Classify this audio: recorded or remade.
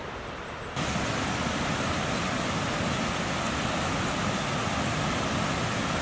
recorded